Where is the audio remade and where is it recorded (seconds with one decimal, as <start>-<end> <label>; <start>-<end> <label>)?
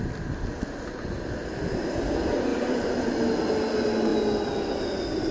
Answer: 0.0-2.5 recorded; 2.5-3.0 remade; 3.0-5.3 recorded